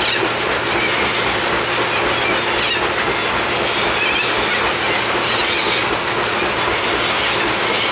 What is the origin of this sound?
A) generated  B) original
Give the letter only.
B